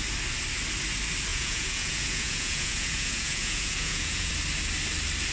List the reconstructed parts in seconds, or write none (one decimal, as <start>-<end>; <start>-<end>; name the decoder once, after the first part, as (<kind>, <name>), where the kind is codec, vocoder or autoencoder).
1.3-4.3 (vocoder, Vocos)